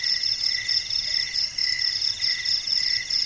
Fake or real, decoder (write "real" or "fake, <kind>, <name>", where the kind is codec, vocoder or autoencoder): real